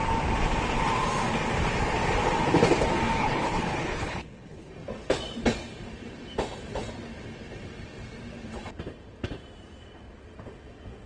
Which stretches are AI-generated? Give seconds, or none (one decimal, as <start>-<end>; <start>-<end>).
3.2-4.7